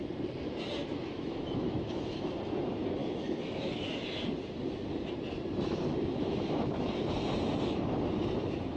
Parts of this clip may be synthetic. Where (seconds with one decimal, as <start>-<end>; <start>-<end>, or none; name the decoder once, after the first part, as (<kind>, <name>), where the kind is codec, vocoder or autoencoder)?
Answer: 0.9-2.3 (autoencoder, DAC-VAE); 3.0-4.0; 5.9-6.9